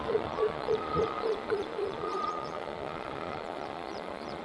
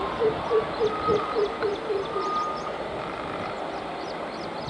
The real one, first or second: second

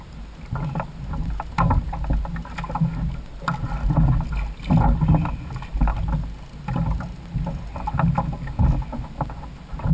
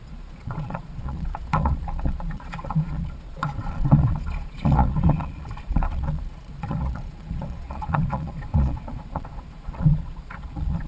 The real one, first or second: first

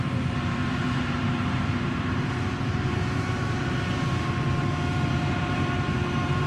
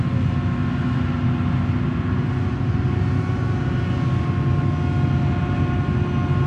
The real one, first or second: second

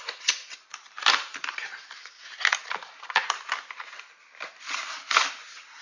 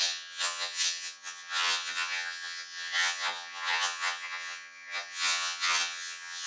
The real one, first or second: first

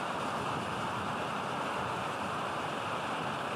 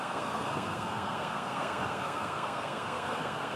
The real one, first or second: first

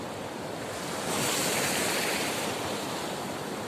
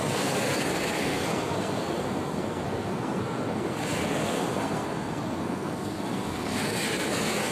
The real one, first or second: first